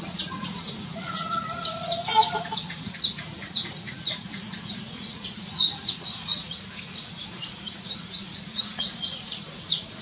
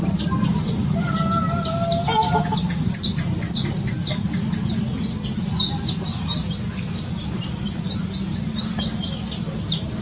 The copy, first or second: first